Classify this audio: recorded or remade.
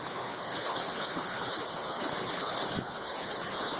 remade